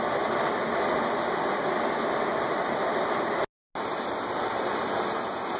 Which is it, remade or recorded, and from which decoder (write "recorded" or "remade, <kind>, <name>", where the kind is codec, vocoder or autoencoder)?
recorded